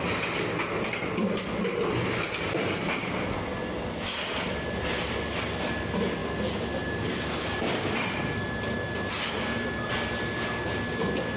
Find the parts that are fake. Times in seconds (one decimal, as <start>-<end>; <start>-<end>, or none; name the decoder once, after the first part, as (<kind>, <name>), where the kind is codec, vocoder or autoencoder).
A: none